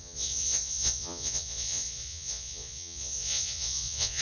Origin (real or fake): fake